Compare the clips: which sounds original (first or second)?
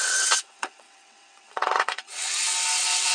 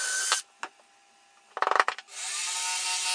second